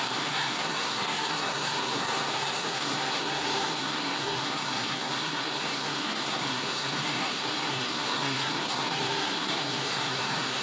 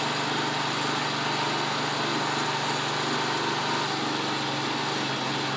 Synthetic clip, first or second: first